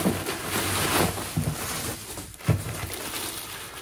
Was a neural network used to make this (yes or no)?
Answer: no